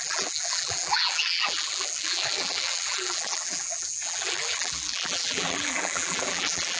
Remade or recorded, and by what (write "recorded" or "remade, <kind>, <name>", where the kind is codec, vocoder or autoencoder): remade, vocoder, BigVGAN v2